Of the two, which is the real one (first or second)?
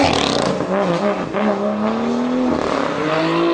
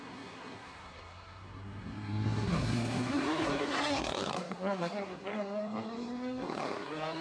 first